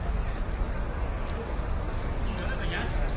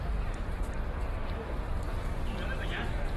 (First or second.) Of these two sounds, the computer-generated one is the second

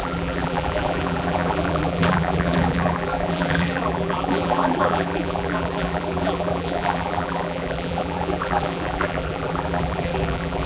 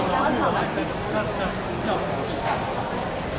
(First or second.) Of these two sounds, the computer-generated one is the first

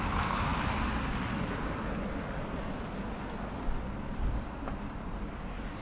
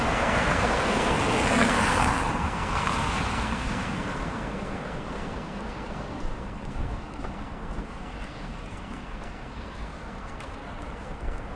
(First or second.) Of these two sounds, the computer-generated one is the second